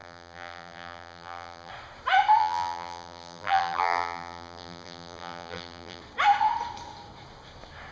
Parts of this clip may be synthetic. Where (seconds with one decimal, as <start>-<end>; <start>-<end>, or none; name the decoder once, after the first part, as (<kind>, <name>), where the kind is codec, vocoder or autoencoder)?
0.0-1.7 (vocoder, BigVGAN v2); 2.4-6.0